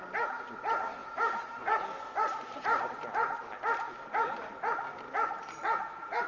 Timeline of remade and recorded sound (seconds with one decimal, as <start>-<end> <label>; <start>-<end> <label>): 0.0-6.3 recorded